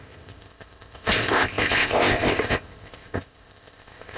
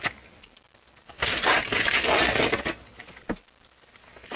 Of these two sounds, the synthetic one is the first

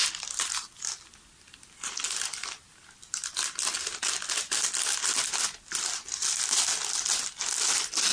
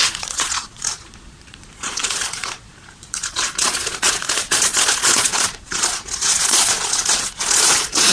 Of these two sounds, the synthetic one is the second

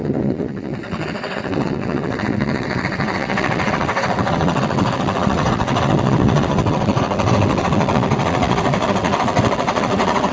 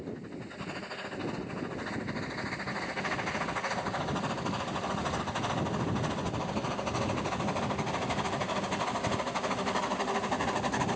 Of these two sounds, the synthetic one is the first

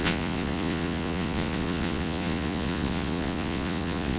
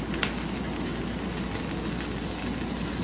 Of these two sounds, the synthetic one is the first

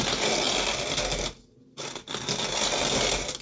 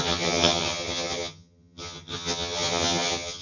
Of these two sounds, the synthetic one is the second